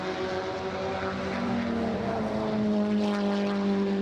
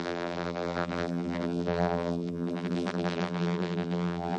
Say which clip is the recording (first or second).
first